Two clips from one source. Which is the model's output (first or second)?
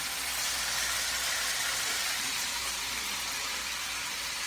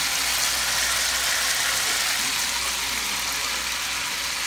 first